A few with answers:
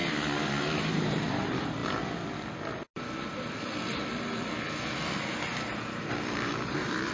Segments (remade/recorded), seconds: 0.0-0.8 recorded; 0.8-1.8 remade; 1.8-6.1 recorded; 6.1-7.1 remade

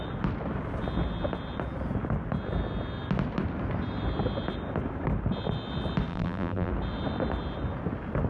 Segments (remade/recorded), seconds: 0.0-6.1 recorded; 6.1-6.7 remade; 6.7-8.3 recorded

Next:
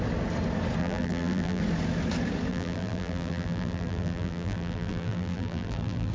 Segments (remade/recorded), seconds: 0.0-0.8 recorded; 0.8-1.6 remade; 1.6-2.5 recorded; 2.5-6.1 remade

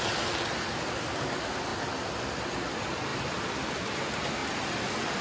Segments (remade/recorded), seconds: 0.0-1.7 recorded; 1.7-2.3 remade; 2.3-3.1 recorded; 3.1-3.7 remade; 3.7-5.2 recorded

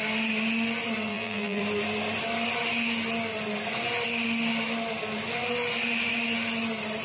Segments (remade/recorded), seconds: 0.0-1.1 recorded; 1.1-1.6 remade; 1.6-7.0 recorded